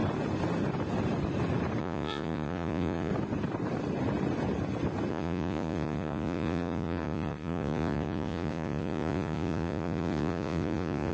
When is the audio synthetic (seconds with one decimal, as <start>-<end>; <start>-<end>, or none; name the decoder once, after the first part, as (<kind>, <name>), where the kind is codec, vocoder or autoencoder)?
1.8-3.1 (vocoder, Vocos); 5.1-11.1